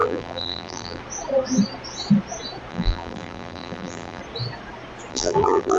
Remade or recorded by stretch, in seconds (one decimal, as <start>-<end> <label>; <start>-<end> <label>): 0.0-1.0 remade; 1.0-2.7 recorded; 2.7-4.2 remade; 4.2-5.1 recorded; 5.1-5.8 remade